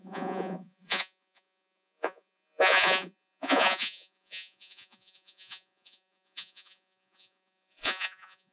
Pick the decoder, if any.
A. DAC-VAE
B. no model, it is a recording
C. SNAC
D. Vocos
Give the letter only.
D